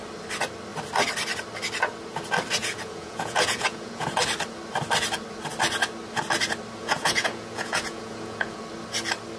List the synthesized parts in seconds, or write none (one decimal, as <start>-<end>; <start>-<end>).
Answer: 2.6-4.2; 6.8-8.6